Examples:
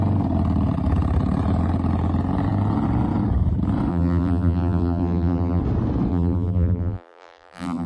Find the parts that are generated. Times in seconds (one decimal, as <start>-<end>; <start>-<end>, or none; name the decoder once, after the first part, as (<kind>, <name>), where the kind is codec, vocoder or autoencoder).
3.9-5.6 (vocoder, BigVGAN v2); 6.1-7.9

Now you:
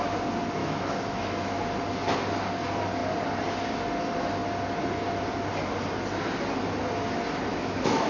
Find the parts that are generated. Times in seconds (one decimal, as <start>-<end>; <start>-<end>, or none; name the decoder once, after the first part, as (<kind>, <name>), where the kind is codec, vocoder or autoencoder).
0.6-1.6 (autoencoder, DAC-VAE); 7.5-8.1

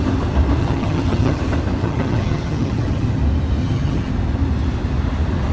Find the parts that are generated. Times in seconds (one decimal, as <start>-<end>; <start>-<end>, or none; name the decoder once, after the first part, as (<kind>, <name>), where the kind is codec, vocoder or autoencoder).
0.6-1.4 (vocoder, HiFi-GAN); 1.8-3.2; 3.6-4.1

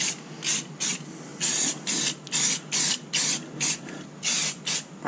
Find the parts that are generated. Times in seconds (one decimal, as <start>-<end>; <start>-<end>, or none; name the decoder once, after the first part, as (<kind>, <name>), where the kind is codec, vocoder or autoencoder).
none

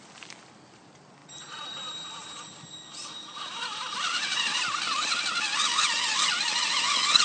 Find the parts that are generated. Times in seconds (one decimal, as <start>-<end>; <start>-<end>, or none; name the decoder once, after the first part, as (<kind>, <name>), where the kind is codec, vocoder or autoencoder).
1.2-5.2 (vocoder, BigVGAN v2)

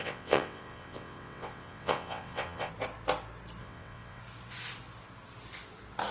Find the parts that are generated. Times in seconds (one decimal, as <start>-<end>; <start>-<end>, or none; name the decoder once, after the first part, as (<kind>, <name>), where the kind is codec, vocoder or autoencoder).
0.0-2.7 (vocoder, WaveNeXt); 3.6-4.2